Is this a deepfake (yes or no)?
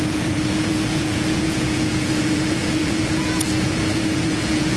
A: yes